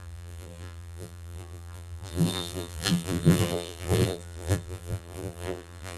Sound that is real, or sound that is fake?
fake